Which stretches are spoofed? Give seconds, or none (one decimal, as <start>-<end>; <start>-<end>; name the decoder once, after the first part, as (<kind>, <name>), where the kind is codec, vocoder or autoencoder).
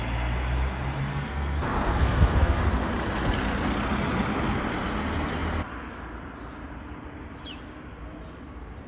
1.1-2.6 (codec, SNAC)